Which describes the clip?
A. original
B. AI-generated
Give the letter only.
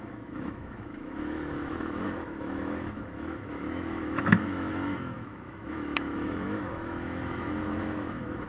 B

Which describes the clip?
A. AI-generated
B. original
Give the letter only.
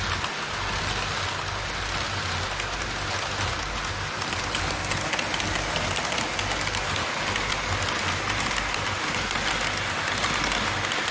B